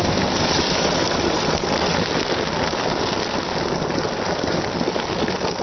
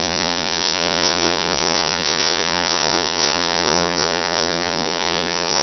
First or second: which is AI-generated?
second